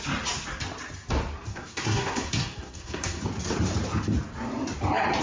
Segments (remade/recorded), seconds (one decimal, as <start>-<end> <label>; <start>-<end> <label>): 0.0-1.5 recorded; 1.5-3.2 remade; 3.2-5.2 recorded